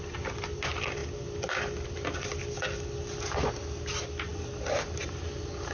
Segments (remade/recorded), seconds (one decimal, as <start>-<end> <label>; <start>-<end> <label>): 0.0-5.7 recorded